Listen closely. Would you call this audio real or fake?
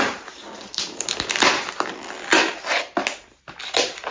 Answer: real